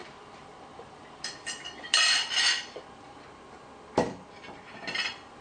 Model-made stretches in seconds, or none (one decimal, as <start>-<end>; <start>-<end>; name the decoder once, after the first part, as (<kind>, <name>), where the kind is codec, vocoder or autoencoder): 0.0-3.2 (vocoder, BigVGAN v2)